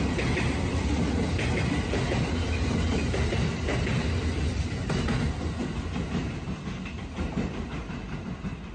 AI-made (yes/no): no